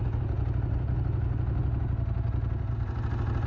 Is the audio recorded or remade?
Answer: recorded